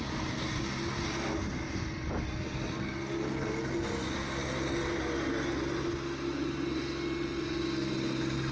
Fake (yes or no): no